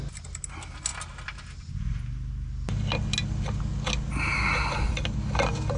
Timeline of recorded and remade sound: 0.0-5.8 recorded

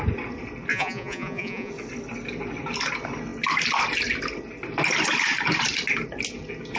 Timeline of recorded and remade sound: 0.0-0.7 recorded; 0.7-1.7 remade; 1.7-6.8 recorded